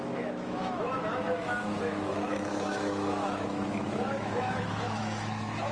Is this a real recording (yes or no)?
no